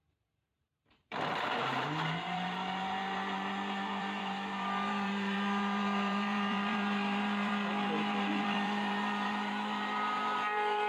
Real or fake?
fake